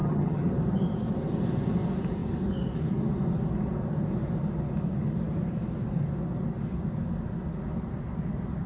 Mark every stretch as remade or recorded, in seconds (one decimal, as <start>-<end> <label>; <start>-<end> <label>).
0.0-0.5 remade; 0.5-8.7 recorded